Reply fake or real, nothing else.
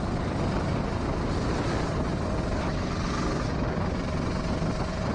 real